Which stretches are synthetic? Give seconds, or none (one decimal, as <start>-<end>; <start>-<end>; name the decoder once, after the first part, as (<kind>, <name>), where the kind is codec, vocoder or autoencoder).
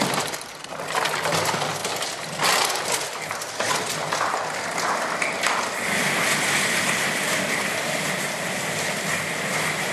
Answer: none